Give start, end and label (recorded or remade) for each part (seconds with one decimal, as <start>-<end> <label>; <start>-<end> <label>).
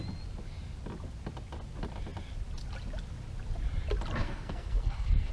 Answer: 0.0-4.2 recorded; 4.2-5.3 remade